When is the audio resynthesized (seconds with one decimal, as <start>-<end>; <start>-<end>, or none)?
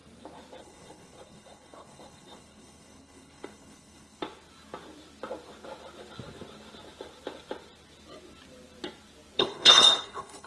0.6-4.2; 9.4-10.5